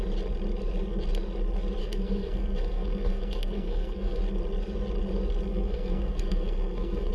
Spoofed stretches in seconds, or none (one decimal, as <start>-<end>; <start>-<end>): 1.8-4.2; 5.5-7.1